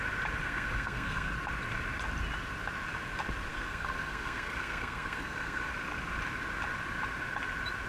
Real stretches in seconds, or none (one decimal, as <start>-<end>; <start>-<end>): 0.0-0.4; 1.3-3.5; 5.7-7.9